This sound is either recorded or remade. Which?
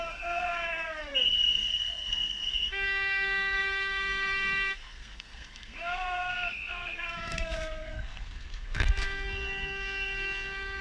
remade